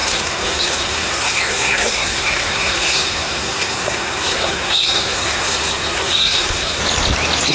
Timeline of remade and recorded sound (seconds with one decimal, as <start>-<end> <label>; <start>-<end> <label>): 0.0-6.8 remade; 6.8-7.5 recorded